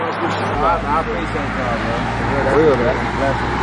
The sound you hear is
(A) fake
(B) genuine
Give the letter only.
B